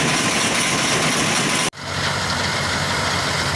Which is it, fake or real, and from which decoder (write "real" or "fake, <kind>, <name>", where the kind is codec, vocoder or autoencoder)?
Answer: real